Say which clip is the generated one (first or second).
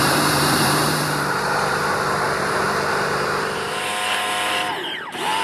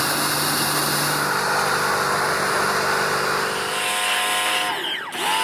first